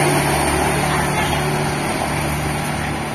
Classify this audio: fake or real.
real